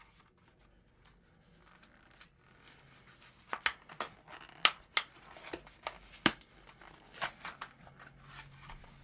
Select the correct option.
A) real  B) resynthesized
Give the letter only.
A